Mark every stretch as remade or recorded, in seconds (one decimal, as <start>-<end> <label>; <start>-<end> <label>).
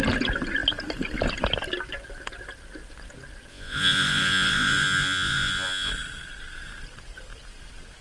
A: 0.0-3.5 recorded; 3.5-5.9 remade; 5.9-8.0 recorded